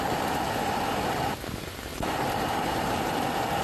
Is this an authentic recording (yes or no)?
yes